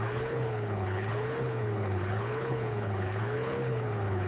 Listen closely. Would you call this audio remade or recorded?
remade